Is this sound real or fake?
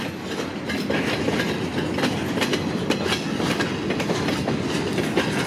real